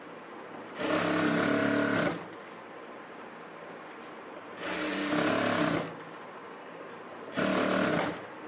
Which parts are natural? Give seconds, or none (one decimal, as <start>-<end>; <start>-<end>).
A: 0.0-6.4; 6.9-8.5